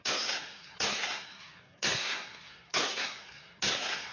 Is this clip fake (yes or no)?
yes